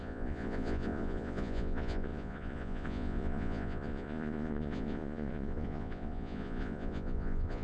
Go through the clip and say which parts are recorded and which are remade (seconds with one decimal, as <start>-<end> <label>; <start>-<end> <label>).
0.0-7.6 remade